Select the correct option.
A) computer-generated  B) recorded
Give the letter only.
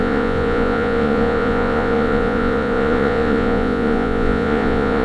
A